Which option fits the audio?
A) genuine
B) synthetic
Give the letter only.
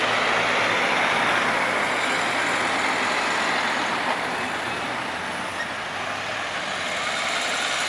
A